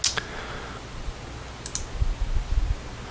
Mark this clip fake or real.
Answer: real